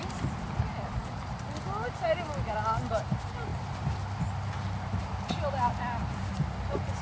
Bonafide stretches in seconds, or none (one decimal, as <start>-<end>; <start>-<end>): 0.0-7.0

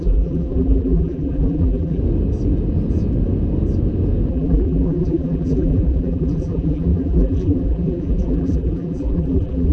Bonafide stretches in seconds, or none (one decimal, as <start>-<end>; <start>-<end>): 2.0-4.3

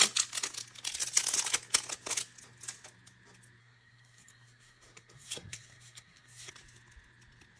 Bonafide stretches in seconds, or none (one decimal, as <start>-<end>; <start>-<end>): 0.0-3.6; 6.5-7.6